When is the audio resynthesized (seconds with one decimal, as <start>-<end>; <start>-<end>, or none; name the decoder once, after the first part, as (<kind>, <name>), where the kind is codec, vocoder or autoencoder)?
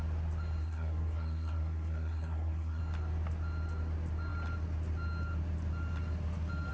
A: 0.6-2.8 (codec, SNAC)